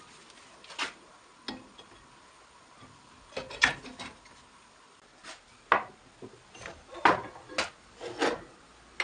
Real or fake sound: real